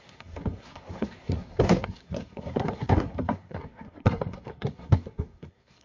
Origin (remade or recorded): remade